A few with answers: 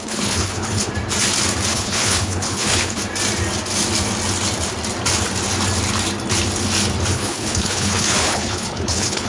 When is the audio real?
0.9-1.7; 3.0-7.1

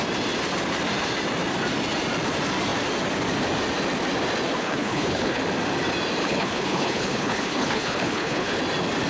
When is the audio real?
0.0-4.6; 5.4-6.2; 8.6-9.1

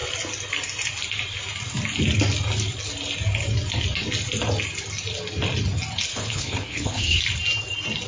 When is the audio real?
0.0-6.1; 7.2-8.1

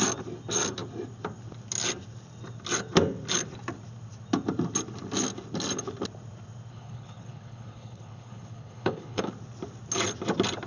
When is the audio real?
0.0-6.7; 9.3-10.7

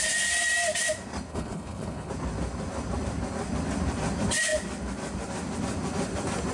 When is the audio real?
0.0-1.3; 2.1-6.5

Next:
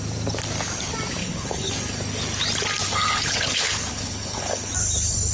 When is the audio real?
0.0-1.2; 1.7-2.8; 4.7-5.3